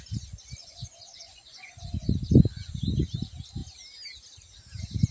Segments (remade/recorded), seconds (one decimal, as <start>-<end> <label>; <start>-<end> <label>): 0.0-0.6 recorded; 0.6-2.3 remade; 2.3-5.1 recorded